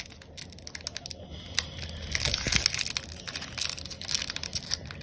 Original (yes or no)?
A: yes